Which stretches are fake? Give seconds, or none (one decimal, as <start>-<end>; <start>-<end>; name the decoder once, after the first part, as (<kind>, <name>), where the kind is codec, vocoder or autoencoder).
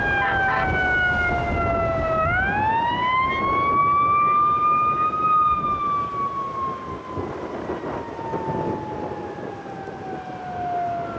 none